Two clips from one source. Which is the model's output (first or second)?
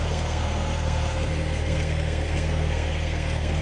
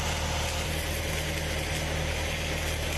first